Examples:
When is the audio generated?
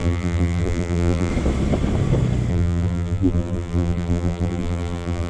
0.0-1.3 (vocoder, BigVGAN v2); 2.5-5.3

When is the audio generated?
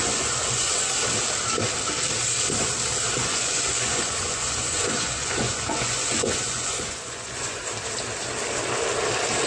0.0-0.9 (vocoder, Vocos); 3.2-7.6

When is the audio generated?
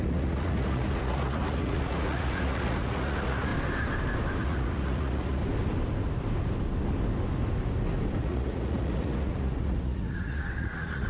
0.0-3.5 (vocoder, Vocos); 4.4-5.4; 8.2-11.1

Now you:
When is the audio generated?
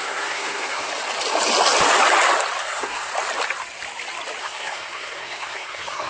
0.0-0.9 (codec, SNAC); 2.6-3.1; 4.4-6.1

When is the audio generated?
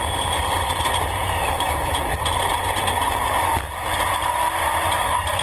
1.2-1.9 (autoencoder, DAC-VAE)